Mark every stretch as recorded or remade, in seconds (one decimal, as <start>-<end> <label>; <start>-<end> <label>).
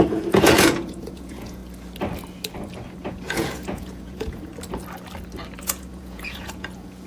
0.0-1.6 remade; 1.6-3.1 recorded; 3.1-4.5 remade; 4.5-5.6 recorded; 5.6-7.1 remade